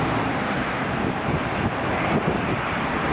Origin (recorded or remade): recorded